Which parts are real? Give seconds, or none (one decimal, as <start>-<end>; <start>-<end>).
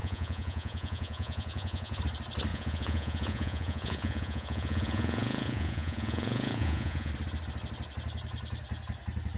2.0-2.5; 7.1-9.4